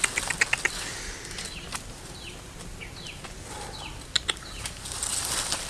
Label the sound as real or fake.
real